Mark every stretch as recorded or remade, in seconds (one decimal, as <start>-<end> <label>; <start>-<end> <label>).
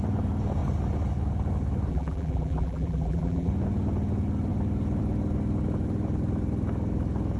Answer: 0.0-1.9 recorded; 1.9-3.5 remade; 3.5-7.4 recorded